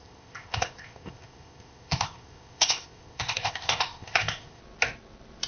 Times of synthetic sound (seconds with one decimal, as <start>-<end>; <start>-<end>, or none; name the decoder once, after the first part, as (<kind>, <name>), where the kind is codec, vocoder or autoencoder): 0.0-4.6 (codec, ZipCodec)